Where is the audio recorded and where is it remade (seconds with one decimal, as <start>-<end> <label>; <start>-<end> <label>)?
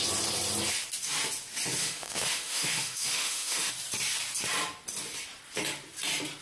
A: 0.0-1.8 recorded; 1.8-3.7 remade; 3.7-6.4 recorded